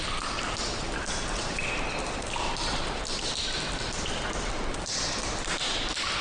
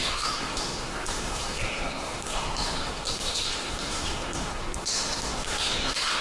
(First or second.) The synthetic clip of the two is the second